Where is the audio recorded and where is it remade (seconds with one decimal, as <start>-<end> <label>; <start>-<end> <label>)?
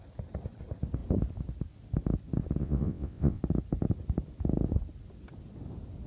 0.0-2.6 recorded; 2.6-3.4 remade; 3.4-6.1 recorded